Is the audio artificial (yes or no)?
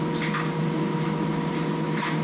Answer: no